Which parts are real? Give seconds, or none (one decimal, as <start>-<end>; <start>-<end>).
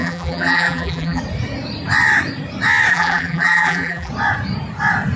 1.2-2.9; 4.1-5.2